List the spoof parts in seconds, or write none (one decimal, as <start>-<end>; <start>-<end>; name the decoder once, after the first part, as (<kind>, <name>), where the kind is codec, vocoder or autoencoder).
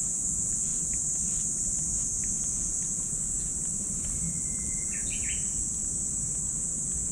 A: 0.0-0.7 (vocoder, Vocos); 2.5-3.5; 4.6-5.8; 6.6-7.1